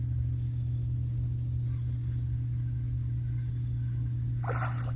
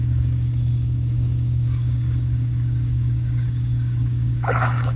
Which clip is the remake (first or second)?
second